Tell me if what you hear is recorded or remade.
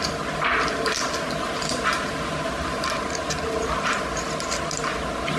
recorded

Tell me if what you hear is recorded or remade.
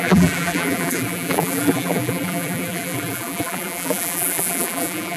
remade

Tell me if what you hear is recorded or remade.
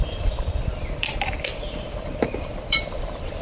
remade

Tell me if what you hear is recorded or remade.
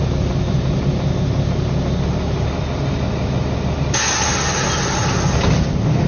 recorded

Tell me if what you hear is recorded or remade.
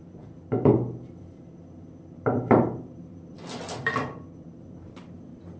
remade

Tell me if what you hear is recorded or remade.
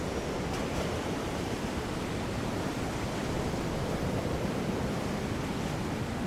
remade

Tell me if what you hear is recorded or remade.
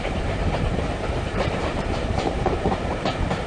remade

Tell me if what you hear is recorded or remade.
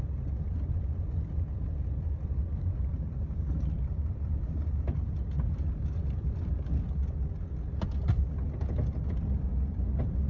recorded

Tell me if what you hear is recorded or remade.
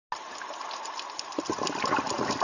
recorded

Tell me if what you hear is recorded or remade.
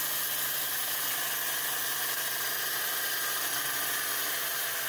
recorded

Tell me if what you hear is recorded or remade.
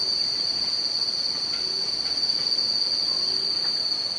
recorded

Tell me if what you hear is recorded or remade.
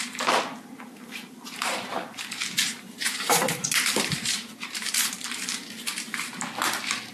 remade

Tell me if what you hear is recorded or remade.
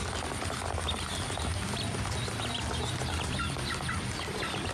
remade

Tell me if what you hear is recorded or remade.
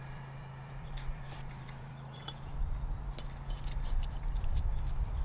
remade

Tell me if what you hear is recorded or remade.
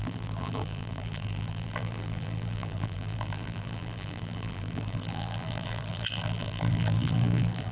remade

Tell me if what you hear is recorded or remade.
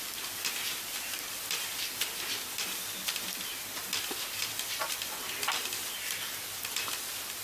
remade